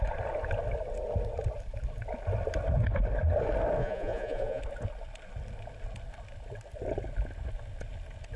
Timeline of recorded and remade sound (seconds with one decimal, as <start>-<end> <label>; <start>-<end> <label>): 0.0-3.8 recorded; 3.8-4.6 remade; 4.6-8.4 recorded

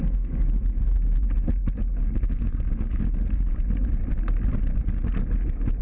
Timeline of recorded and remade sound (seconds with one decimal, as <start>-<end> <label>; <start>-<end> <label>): 0.0-2.0 recorded; 2.0-3.0 remade; 3.0-5.8 recorded

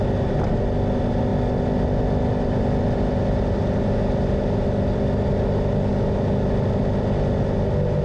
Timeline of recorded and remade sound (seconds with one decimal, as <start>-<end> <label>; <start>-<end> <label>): 0.0-8.0 recorded

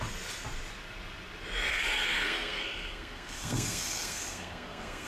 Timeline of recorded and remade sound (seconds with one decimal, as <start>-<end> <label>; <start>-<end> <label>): 0.0-1.7 recorded; 1.7-5.1 remade